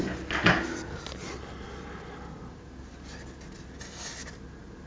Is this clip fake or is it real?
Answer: real